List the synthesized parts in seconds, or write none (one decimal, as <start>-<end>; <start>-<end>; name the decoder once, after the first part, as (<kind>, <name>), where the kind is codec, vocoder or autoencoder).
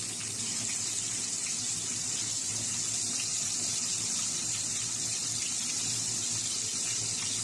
none